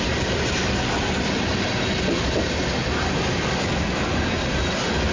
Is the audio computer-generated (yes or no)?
no